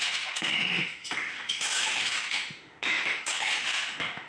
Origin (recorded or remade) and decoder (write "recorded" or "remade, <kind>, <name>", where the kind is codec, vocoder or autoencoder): remade, autoencoder, DAC-VAE